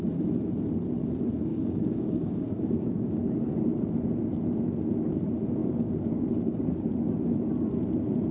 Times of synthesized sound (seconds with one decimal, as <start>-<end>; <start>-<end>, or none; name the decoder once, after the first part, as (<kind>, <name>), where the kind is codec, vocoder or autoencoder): 1.5-3.2 (codec, DAC); 5.6-6.9